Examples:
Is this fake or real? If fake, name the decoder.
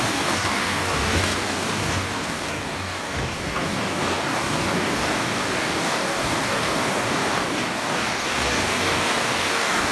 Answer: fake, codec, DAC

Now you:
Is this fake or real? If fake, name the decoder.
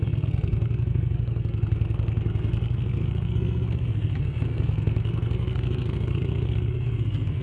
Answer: fake, codec, SNAC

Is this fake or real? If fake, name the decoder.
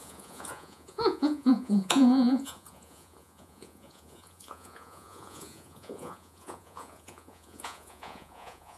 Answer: fake, vocoder, Vocos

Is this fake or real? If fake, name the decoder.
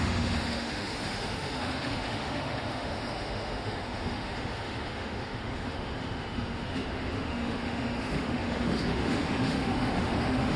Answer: fake, autoencoder, DAC-VAE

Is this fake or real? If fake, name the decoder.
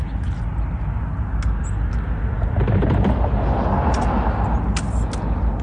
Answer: real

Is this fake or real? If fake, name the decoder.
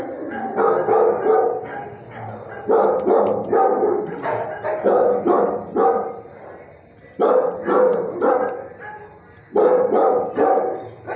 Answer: real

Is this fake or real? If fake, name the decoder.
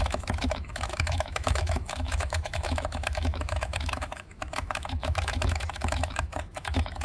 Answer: fake, autoencoder, DAC-VAE